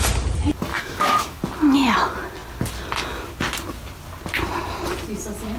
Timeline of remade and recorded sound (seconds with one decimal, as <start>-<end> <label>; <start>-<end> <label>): 0.0-0.7 recorded; 0.7-1.4 remade; 1.4-5.6 recorded